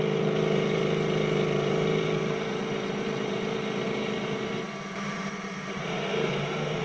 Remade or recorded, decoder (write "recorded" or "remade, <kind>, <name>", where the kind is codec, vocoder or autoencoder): remade, vocoder, BigVGAN v2